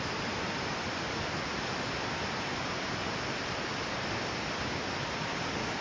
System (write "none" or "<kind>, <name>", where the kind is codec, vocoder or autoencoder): none